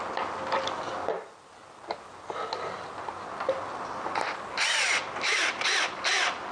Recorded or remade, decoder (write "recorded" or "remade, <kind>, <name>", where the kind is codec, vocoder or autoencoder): recorded